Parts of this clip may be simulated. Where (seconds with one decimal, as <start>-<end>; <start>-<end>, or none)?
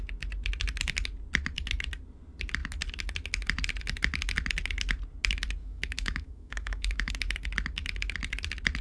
5.6-7.1